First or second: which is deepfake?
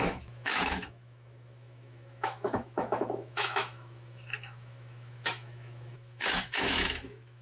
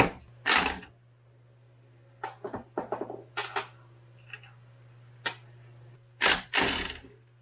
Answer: first